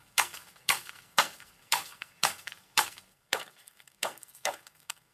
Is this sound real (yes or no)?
no